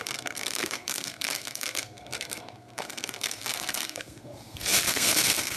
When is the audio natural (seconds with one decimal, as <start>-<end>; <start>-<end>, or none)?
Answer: none

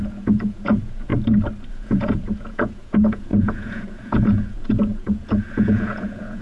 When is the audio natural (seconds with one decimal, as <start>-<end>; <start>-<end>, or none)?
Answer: 1.1-1.7